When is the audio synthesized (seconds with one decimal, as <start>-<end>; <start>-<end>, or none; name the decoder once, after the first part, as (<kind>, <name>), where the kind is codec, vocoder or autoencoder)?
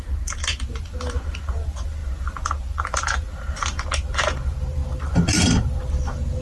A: none